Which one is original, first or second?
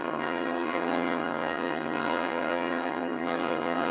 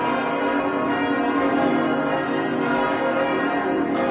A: second